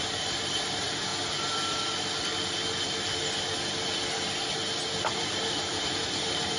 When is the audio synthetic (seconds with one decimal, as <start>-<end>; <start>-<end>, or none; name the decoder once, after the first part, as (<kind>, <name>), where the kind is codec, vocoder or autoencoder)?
0.0-1.1 (vocoder, BigVGAN v2); 5.1-6.6